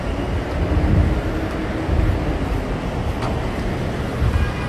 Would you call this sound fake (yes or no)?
no